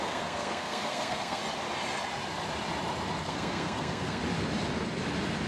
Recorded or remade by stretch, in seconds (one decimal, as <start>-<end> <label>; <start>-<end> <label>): 0.0-1.4 remade; 1.4-3.2 recorded; 3.2-4.2 remade; 4.2-5.5 recorded